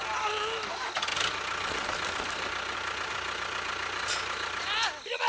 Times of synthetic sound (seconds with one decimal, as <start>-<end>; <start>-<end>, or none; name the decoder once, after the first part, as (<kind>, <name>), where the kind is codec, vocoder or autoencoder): none